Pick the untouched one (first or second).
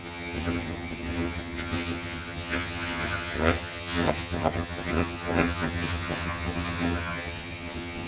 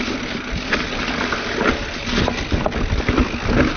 second